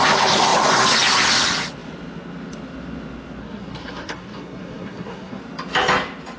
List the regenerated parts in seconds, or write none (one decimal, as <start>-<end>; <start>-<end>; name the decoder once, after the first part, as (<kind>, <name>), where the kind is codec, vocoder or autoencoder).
3.4-5.4 (codec, SNAC)